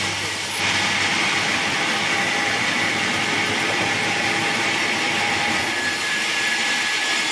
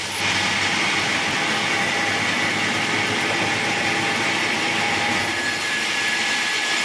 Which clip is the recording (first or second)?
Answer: second